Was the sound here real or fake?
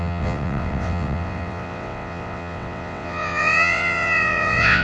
fake